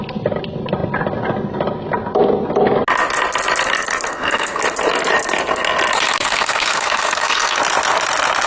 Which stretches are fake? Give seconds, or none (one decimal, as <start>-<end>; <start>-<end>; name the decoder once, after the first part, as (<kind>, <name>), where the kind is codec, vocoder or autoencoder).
4.1-4.6 (codec, SNAC); 6.1-7.6